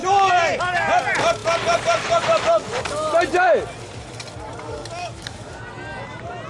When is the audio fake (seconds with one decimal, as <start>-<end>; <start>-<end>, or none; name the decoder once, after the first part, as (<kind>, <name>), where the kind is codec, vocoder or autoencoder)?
5.0-5.6 (codec, DAC)